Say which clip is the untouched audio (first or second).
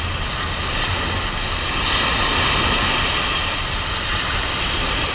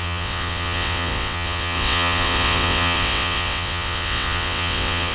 first